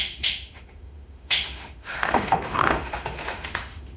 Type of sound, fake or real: fake